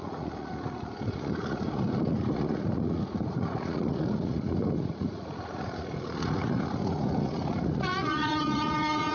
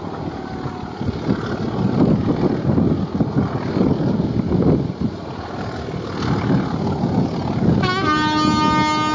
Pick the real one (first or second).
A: second